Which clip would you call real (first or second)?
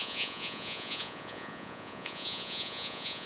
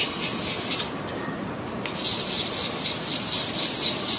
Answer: second